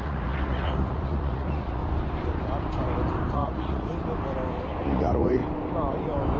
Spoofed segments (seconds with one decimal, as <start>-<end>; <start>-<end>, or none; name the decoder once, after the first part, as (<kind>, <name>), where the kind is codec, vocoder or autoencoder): 0.0-1.8 (vocoder, Vocos); 3.3-3.9; 4.8-5.4